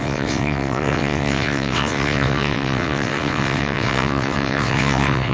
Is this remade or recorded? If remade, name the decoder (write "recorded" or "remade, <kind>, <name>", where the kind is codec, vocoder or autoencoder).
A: remade, vocoder, WaveNeXt